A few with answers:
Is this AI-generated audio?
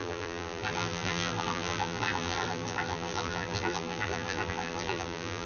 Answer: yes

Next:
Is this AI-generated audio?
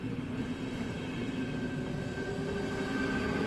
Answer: no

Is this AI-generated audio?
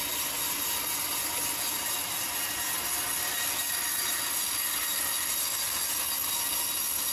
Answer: no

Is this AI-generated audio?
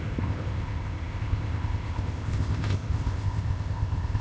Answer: yes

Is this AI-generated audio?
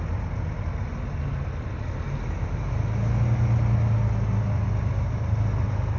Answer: no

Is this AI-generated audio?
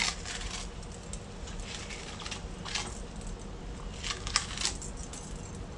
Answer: no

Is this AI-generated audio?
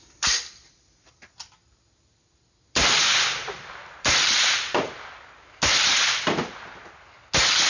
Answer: no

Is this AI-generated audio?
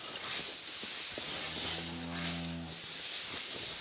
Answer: no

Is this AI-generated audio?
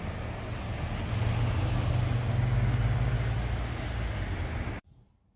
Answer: no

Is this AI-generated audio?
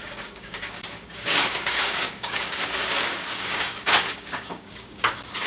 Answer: yes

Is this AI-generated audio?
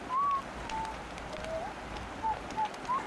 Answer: no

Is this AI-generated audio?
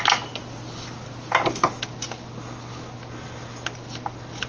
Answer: no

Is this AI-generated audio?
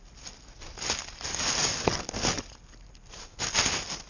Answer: no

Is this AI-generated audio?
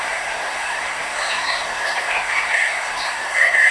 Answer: yes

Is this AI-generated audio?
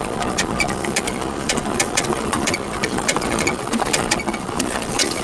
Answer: yes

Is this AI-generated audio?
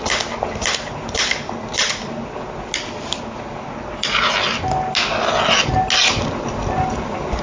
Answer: no